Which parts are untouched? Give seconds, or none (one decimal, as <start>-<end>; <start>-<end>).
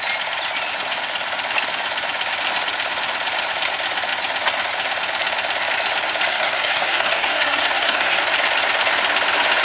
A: 0.0-6.3; 8.2-9.6